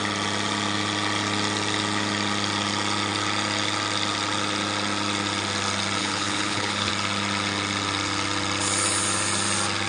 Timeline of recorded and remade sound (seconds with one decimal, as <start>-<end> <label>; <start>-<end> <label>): 0.0-6.0 recorded; 6.0-6.9 remade; 6.9-9.9 recorded